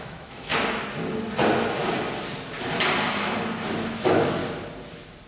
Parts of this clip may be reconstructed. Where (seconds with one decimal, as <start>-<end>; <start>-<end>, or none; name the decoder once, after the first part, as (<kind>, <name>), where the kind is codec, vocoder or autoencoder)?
0.0-0.5 (autoencoder, DAC-VAE); 3.7-4.4